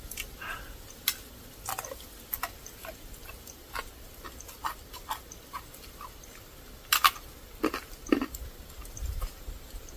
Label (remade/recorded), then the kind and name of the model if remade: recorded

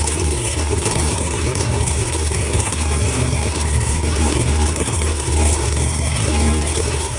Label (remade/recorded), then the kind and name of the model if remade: remade, codec, SNAC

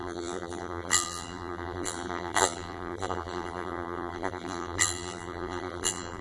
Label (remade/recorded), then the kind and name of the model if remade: remade, vocoder, BigVGAN v2